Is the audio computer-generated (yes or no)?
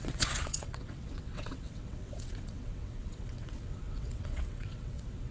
yes